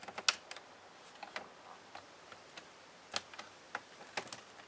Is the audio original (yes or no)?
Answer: yes